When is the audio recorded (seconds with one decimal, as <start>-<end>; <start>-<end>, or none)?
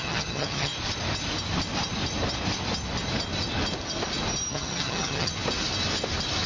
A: 0.7-4.5; 5.3-6.5